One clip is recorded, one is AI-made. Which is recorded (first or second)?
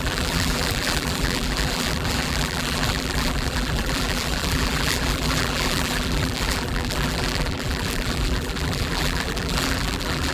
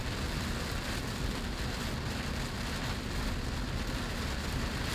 second